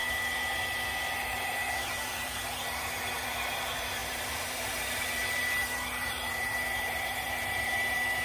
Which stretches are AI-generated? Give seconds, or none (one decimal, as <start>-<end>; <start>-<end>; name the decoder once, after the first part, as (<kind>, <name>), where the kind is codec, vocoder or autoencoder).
1.1-8.2 (vocoder, BigVGAN v2)